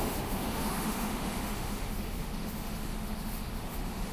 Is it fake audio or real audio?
fake